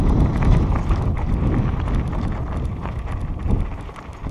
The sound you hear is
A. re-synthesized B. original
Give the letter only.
B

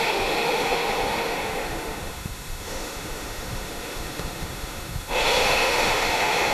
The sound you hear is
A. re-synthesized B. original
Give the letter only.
A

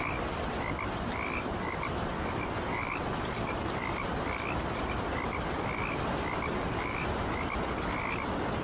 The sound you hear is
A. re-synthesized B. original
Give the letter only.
B